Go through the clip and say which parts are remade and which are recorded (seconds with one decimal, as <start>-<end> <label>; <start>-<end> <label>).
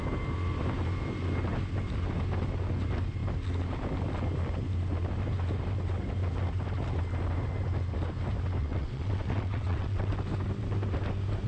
0.0-8.6 recorded; 8.6-10.1 remade; 10.1-11.5 recorded